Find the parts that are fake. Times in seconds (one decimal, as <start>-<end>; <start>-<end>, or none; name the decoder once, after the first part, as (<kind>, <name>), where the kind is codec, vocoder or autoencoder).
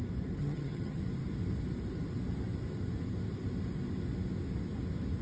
0.4-1.0 (vocoder, HiFi-GAN)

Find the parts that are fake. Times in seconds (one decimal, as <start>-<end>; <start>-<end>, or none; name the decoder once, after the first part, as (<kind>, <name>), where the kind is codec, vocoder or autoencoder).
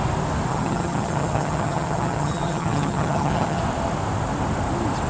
0.5-3.6 (vocoder, HiFi-GAN)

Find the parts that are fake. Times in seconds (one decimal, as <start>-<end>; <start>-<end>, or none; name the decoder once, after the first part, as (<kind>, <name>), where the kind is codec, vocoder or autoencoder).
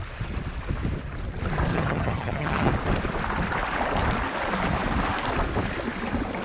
1.7-2.7 (vocoder, HiFi-GAN)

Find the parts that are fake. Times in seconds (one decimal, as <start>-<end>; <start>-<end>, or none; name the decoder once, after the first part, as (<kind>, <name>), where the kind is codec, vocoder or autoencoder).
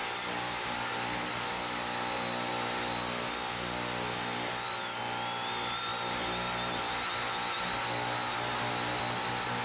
none